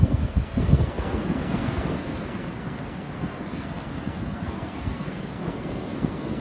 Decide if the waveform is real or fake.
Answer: fake